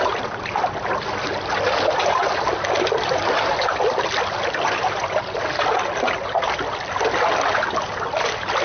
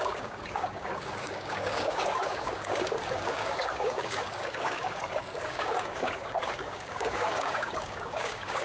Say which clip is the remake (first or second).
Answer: second